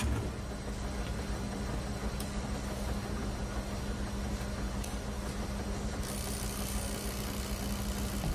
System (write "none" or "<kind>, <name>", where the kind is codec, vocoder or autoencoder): none